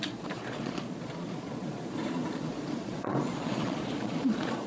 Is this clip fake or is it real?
fake